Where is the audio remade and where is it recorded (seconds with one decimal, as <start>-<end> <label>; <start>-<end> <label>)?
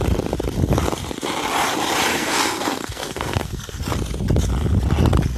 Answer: 0.0-2.1 recorded; 2.1-3.8 remade; 3.8-5.4 recorded